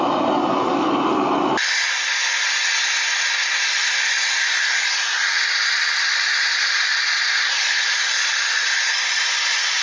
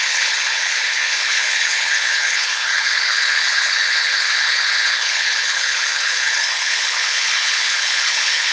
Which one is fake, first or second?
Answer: second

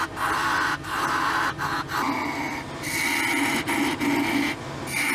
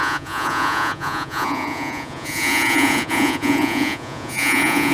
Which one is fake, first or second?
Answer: second